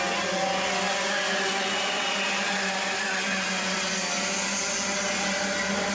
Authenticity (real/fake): real